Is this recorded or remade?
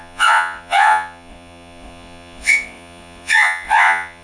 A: remade